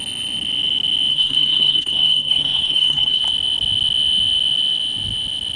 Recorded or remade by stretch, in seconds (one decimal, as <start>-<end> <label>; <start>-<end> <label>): 0.0-1.1 recorded; 1.1-3.2 remade; 3.2-5.6 recorded